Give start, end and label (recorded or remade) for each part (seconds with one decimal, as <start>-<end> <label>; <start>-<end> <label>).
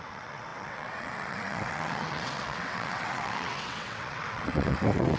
0.0-5.2 remade